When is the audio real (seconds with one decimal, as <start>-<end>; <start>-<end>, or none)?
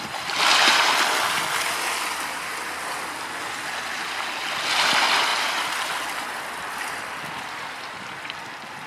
0.0-8.9